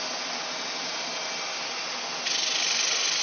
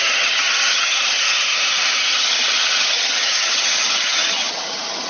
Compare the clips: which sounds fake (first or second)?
second